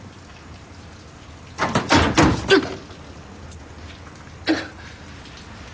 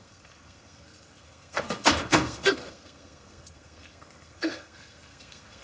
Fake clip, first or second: second